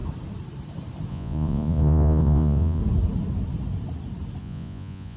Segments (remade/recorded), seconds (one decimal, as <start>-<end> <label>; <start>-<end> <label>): 0.0-1.1 recorded; 1.1-2.8 remade; 2.8-4.4 recorded; 4.4-5.2 remade